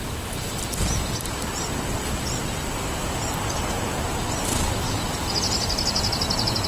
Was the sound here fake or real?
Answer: real